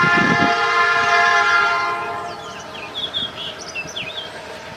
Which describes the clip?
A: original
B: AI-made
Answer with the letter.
A